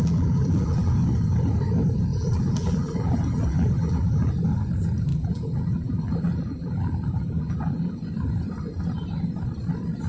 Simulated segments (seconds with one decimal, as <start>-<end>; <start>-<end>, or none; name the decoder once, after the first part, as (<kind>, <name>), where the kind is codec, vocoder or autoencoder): 0.0-0.9 (vocoder, BigVGAN v2); 2.1-4.3; 5.1-8.0